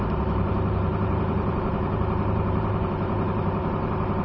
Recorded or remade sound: remade